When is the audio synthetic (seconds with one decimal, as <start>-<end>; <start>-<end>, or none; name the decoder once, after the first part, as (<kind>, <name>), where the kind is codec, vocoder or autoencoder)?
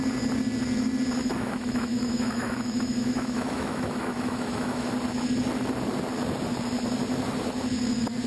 1.2-4.9 (autoencoder, DAC-VAE)